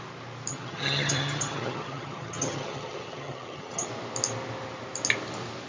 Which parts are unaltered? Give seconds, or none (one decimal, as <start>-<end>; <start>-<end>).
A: 0.0-0.5; 3.9-5.7